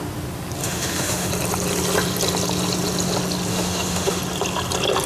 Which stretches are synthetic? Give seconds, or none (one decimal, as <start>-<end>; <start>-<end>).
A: 0.6-1.3; 3.5-4.2